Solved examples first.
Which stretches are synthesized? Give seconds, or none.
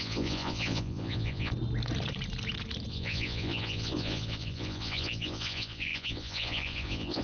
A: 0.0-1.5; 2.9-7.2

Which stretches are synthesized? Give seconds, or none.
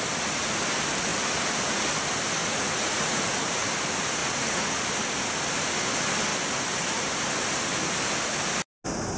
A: 2.4-3.2; 4.2-4.8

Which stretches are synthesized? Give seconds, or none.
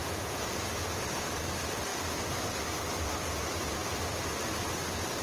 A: 0.0-0.5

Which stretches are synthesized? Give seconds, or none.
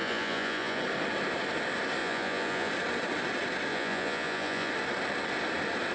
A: 0.0-0.8; 2.0-2.7; 3.7-4.7